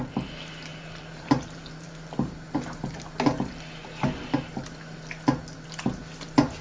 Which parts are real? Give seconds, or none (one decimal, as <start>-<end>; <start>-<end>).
0.0-0.7; 2.3-6.6

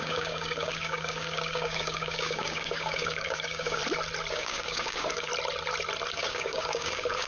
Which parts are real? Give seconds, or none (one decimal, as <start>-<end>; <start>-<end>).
3.8-4.3; 5.3-6.1

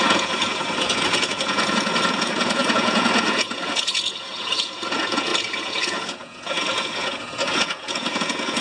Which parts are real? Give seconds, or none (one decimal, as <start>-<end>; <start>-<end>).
none

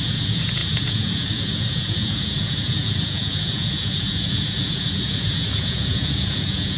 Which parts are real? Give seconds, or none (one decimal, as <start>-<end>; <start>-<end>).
none

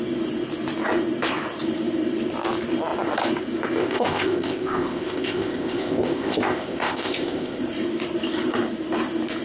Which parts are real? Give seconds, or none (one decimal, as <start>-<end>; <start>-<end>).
0.0-3.8; 7.6-9.4

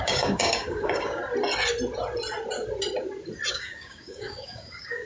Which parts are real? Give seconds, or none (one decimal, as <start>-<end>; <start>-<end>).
1.2-3.5

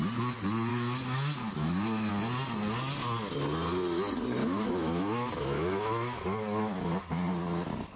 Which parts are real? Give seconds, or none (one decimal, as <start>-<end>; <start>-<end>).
0.0-0.7; 2.1-4.4; 6.2-8.0